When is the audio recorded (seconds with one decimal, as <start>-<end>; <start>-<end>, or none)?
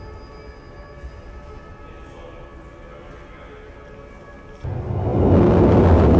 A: 0.0-6.2